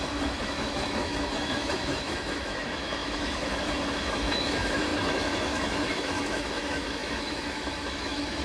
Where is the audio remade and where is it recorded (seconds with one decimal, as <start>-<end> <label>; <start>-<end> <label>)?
0.0-8.4 remade